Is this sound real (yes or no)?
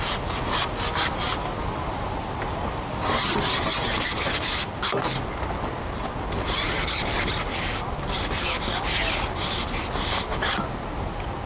yes